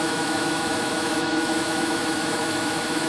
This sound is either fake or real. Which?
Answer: fake